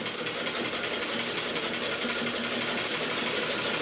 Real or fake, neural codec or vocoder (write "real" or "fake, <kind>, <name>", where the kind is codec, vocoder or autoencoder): real